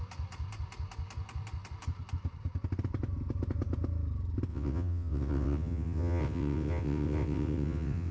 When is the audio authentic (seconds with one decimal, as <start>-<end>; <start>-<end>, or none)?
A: 0.0-4.5